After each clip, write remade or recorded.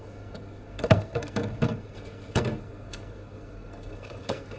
remade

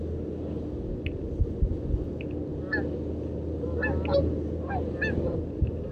recorded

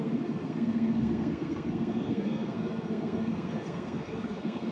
remade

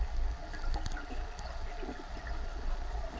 recorded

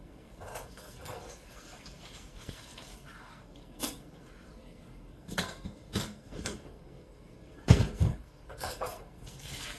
remade